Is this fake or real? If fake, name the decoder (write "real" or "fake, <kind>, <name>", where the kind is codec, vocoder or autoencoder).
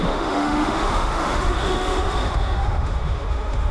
fake, autoencoder, DAC-VAE